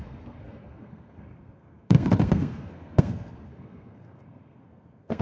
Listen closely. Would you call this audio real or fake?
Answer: fake